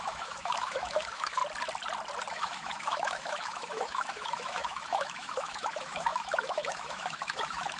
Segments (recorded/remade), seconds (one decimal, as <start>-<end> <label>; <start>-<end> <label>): 0.0-1.4 remade; 1.4-2.3 recorded; 2.3-7.8 remade